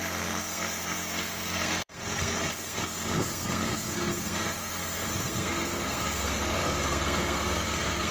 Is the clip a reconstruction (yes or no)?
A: yes